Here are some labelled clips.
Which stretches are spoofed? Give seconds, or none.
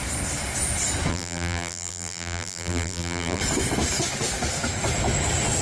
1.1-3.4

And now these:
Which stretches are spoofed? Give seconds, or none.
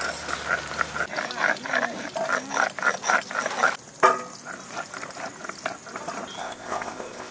6.4-7.3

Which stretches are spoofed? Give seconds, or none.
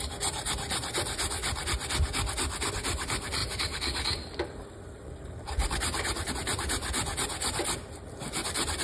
0.0-1.4; 2.7-6.8; 8.1-8.8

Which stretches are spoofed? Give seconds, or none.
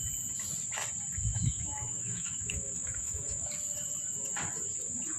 1.3-3.5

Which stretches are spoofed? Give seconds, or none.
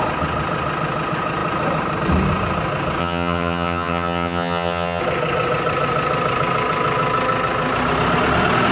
3.0-5.0